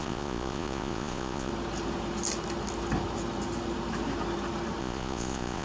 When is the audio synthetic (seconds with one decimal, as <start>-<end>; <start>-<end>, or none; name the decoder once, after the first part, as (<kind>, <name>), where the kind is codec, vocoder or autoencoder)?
0.0-1.5 (vocoder, Vocos); 4.8-5.6